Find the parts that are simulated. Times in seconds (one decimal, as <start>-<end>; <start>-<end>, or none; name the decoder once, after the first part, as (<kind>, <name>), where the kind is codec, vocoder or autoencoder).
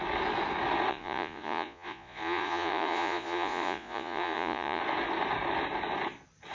0.9-4.8 (vocoder, Vocos)